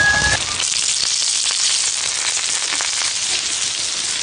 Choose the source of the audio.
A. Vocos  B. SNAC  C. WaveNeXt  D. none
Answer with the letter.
D